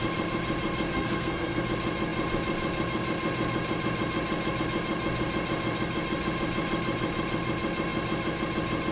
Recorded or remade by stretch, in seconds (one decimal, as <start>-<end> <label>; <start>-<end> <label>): 0.0-0.9 recorded; 0.9-1.6 remade; 1.6-8.9 recorded